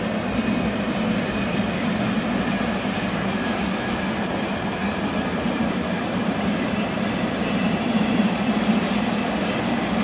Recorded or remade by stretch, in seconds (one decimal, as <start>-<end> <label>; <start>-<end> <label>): 0.0-4.8 recorded; 4.8-8.6 remade; 8.6-10.0 recorded